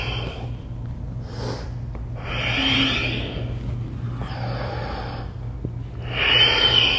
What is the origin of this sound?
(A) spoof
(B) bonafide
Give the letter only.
B